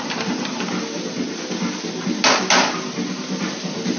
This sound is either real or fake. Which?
real